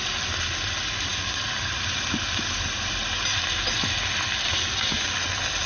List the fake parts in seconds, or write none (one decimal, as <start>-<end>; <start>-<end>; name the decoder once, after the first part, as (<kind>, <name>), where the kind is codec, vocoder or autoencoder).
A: none